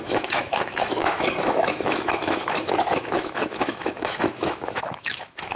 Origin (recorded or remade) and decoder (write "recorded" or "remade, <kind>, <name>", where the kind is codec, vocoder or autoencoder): remade, autoencoder, DAC-VAE